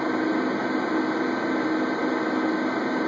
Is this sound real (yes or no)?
yes